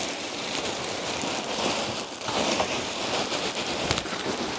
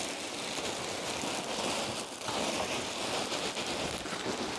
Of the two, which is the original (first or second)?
second